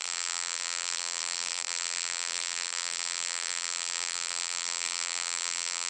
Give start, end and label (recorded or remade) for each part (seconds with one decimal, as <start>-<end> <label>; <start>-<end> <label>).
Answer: 0.0-5.9 remade